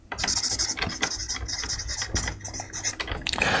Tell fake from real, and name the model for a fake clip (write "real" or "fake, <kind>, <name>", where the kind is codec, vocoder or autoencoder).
real